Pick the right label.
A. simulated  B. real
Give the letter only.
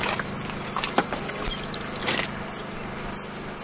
B